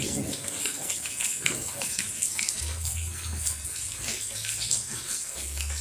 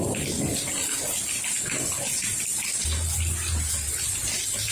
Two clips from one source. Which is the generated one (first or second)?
first